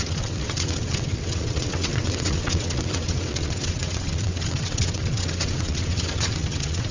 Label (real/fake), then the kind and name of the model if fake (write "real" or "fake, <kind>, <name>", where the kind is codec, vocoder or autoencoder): fake, vocoder, WaveNeXt